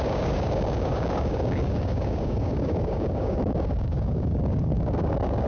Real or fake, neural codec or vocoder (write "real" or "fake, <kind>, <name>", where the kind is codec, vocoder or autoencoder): fake, codec, DAC